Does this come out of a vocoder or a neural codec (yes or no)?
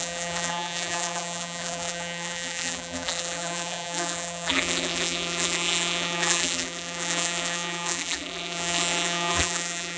yes